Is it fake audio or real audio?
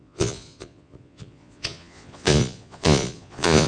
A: fake